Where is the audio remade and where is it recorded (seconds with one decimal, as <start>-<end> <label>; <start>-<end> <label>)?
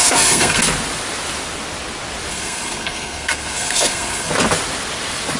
0.0-0.6 remade; 0.6-2.3 recorded; 2.3-4.3 remade; 4.3-5.4 recorded